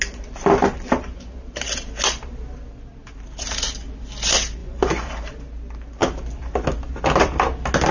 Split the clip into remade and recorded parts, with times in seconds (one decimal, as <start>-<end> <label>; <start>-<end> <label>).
0.0-4.6 recorded; 4.6-5.1 remade; 5.1-7.9 recorded